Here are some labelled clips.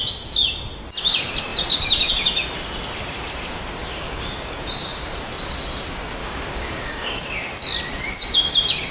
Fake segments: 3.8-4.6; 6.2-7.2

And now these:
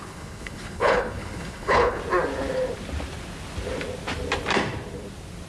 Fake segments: 0.0-2.0

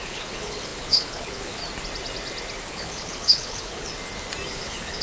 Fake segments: 0.0-1.6; 2.7-3.9; 4.5-5.0

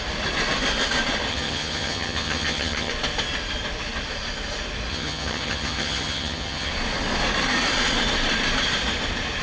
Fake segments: 1.3-2.9; 4.9-6.7

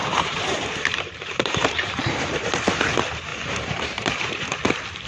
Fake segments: 0.0-2.5; 3.3-4.6

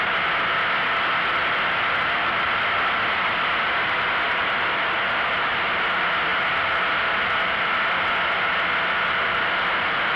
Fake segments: none

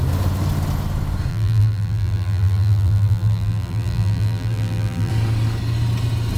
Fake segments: 1.3-5.1

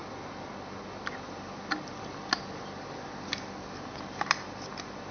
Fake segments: none